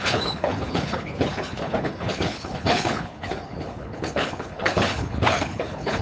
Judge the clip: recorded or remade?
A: remade